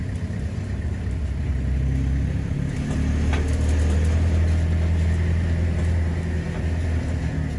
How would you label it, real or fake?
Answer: real